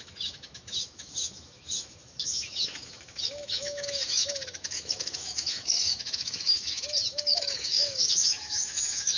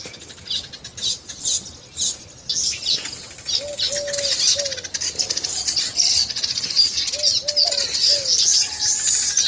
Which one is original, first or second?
second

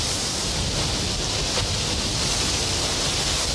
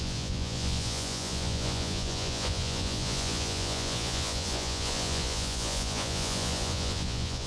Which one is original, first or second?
first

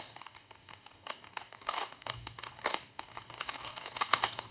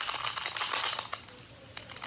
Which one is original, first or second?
second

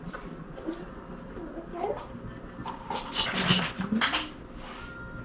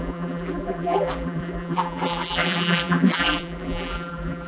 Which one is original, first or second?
first